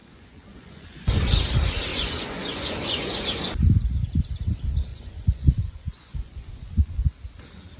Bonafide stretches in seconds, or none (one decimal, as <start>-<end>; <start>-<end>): 1.4-1.9; 3.4-4.9; 7.0-7.8